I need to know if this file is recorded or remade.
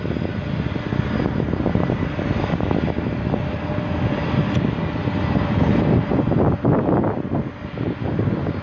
recorded